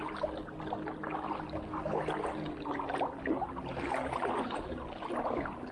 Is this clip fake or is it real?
real